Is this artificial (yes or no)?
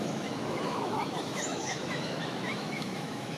yes